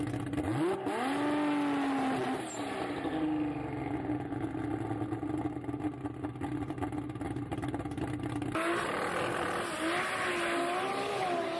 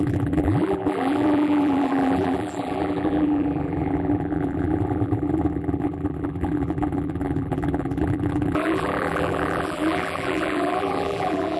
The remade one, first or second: second